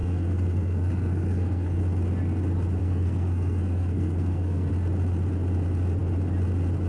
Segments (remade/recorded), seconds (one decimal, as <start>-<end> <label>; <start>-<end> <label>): 0.0-1.8 remade; 1.8-2.8 recorded; 2.8-4.7 remade; 4.7-6.9 recorded